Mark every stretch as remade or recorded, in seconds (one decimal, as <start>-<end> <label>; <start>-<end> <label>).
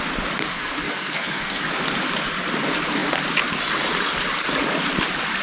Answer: 0.0-0.5 recorded; 0.5-1.6 remade; 1.6-5.4 recorded